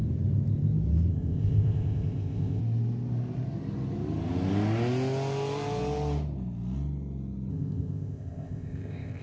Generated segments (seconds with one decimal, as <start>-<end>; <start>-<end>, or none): 1.1-2.6; 7.5-9.2